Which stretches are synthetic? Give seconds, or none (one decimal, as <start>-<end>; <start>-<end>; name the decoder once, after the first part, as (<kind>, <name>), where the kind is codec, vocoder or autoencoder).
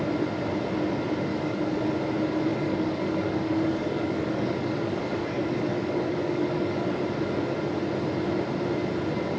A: 1.3-1.9 (codec, DAC); 2.5-7.0